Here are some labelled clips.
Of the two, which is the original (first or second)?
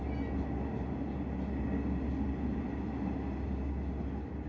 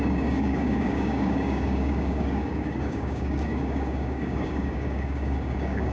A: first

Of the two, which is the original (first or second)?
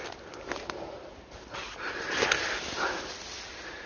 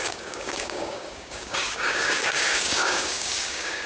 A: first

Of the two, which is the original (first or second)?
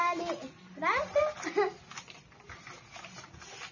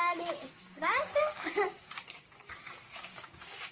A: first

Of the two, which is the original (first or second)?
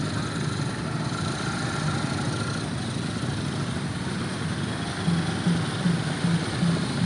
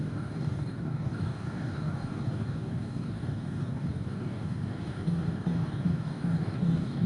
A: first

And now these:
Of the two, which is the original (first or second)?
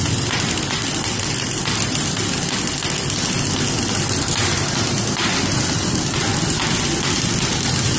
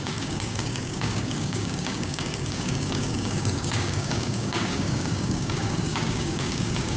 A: first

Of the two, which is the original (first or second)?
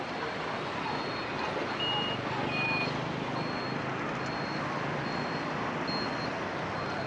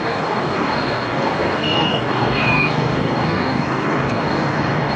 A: first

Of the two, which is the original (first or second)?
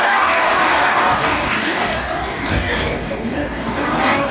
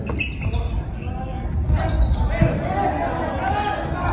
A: second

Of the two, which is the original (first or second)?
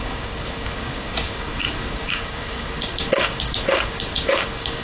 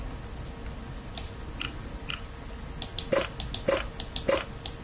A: second